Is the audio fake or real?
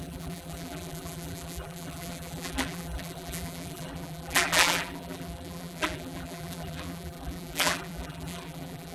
fake